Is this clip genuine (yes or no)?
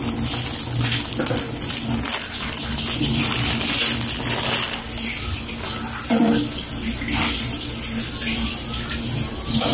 yes